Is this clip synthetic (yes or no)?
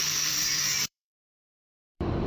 yes